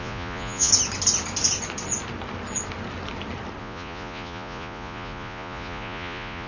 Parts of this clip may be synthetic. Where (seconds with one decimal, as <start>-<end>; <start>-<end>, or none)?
0.0-0.7; 3.6-6.5